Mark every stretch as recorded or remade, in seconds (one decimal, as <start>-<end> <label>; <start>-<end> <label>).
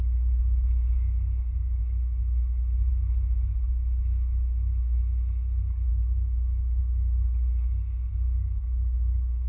0.0-9.5 recorded